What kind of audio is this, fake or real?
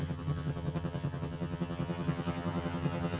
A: fake